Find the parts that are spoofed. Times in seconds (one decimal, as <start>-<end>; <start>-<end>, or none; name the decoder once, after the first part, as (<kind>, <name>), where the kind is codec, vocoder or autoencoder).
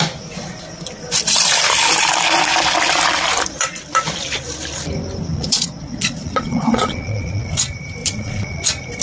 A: 5.3-7.5 (vocoder, Vocos); 8.0-8.6